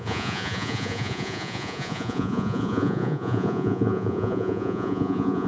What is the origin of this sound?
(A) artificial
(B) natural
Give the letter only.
A